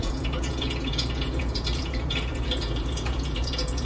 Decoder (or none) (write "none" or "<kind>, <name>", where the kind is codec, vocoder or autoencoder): vocoder, Vocos